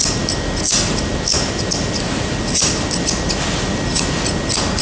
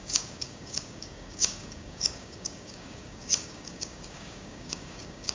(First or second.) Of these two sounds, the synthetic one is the second